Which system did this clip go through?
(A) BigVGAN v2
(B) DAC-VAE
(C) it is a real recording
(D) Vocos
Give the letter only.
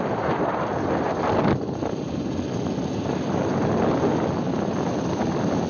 C